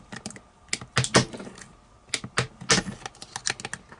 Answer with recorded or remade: recorded